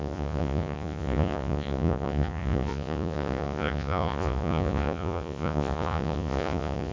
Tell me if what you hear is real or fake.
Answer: fake